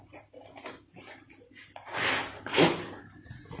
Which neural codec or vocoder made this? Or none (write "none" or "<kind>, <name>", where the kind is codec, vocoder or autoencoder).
none